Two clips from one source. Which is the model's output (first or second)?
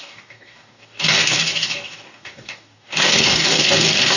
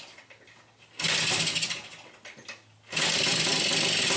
first